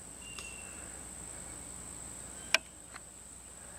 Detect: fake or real real